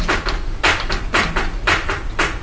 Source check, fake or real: real